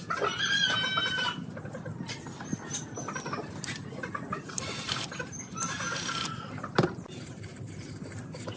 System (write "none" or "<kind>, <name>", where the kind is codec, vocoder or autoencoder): none